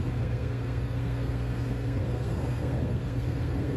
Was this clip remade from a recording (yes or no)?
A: yes